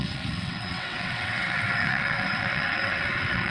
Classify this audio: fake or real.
fake